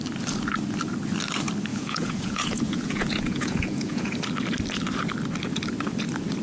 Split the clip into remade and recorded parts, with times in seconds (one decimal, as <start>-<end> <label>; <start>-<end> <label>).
0.0-1.7 recorded; 1.7-4.2 remade; 4.2-6.4 recorded